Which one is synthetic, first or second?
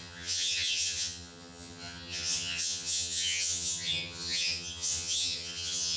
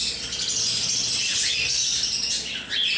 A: first